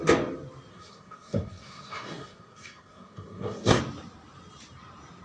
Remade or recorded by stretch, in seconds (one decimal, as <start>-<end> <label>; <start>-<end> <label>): 0.0-0.7 recorded; 0.7-3.8 remade; 3.8-5.2 recorded